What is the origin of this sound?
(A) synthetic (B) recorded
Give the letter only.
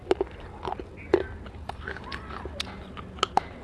B